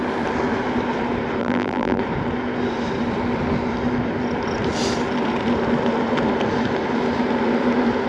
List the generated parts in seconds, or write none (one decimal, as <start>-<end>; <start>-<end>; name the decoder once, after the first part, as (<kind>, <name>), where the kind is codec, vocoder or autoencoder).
1.4-2.0 (vocoder, BigVGAN v2)